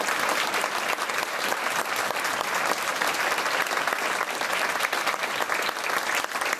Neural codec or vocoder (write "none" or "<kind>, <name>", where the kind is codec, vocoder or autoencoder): none